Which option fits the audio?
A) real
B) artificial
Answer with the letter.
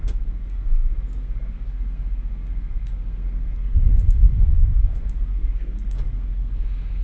B